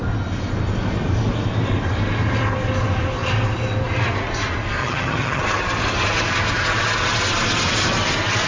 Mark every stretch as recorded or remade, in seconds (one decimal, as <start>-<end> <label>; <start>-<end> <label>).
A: 0.0-4.8 recorded; 4.8-5.4 remade; 5.4-8.5 recorded